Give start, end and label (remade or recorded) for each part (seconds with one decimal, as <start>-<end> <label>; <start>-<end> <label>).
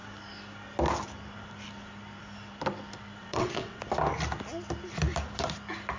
0.0-3.2 recorded; 3.2-3.8 remade; 3.8-6.0 recorded